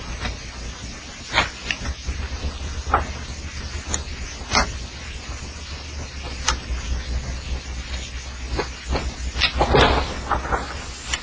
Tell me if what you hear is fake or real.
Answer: real